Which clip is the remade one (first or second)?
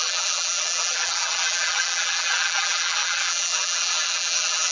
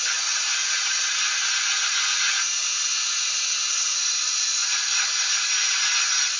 first